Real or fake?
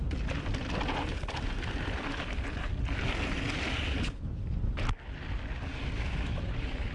real